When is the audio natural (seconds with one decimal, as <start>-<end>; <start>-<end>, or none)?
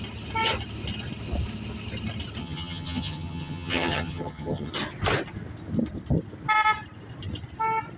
0.0-2.4; 4.7-8.0